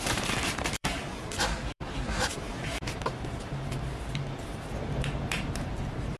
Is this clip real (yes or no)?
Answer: no